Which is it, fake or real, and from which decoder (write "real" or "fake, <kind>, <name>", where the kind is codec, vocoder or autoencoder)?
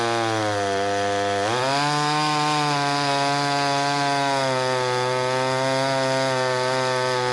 real